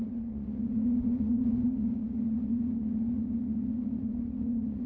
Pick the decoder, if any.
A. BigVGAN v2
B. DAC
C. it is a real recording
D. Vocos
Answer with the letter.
D